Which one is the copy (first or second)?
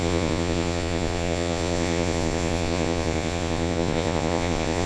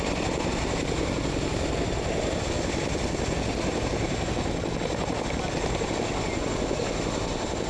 first